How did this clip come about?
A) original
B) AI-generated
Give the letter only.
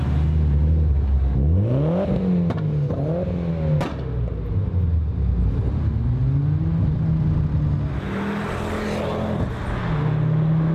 A